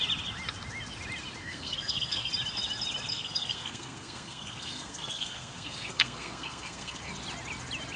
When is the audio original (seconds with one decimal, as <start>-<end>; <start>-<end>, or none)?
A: 0.0-1.4; 2.3-3.1; 7.1-8.0